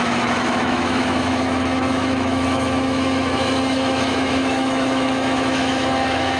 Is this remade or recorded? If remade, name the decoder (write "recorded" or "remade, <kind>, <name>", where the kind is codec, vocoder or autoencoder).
remade, autoencoder, DAC-VAE